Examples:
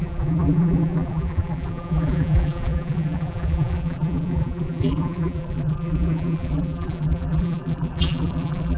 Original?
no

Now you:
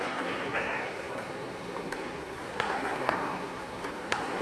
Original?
no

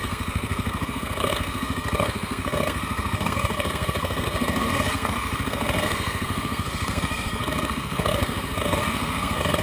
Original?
no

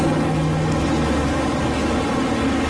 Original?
yes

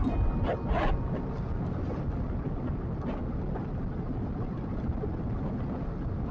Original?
yes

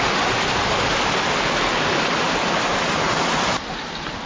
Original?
yes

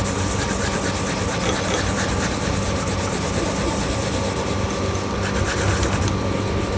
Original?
yes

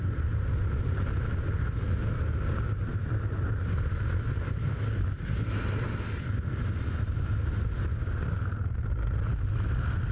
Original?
yes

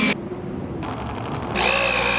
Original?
yes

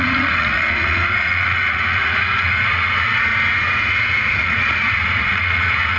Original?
no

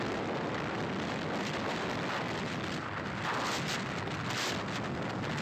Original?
yes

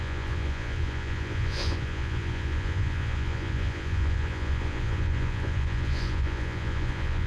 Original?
no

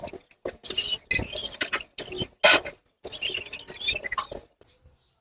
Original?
yes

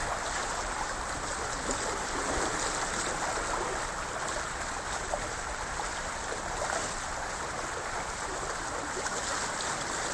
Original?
yes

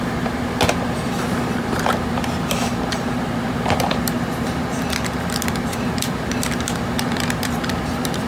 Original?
no